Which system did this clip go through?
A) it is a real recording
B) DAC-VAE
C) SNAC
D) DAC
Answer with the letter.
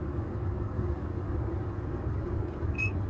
D